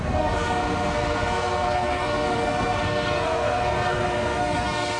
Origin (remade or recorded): remade